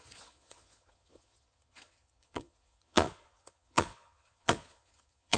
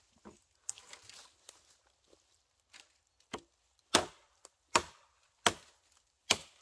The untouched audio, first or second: second